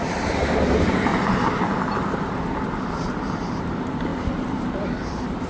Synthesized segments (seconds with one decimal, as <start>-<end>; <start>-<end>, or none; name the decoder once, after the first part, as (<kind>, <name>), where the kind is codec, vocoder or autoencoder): 0.0-1.1 (vocoder, BigVGAN v2); 3.5-5.5

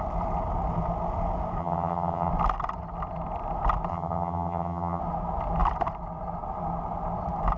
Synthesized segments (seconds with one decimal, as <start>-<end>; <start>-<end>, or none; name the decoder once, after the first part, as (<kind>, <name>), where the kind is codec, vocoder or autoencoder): 1.6-2.3 (vocoder, HiFi-GAN); 3.9-5.0

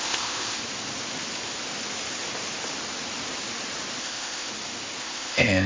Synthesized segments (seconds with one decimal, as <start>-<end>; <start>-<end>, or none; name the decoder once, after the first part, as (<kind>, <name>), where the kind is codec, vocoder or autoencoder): 0.0-0.6 (codec, ZipCodec); 4.0-4.5; 5.0-5.7

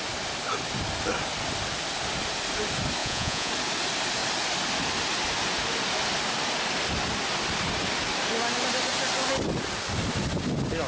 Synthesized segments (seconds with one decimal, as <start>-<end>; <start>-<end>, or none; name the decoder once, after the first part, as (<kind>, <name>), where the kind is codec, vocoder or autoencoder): 3.0-3.5 (vocoder, Vocos)

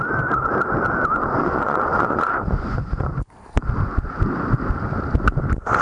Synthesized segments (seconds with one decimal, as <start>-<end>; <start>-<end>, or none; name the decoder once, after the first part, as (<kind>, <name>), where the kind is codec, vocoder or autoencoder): 1.4-3.1 (vocoder, Vocos)

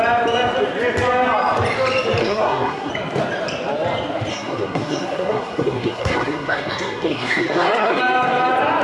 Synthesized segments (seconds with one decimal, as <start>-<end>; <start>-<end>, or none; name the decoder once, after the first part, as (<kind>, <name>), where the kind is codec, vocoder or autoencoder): 2.2-2.9 (codec, SNAC); 4.3-8.0